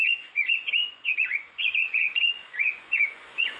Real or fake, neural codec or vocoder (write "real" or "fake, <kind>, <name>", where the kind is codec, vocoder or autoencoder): fake, vocoder, Vocos